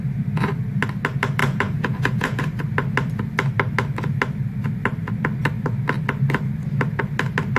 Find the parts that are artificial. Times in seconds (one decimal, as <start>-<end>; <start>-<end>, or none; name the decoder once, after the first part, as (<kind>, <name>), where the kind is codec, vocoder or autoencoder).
1.4-2.4 (vocoder, Vocos)